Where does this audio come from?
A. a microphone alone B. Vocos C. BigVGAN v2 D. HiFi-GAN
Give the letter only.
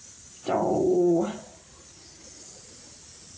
A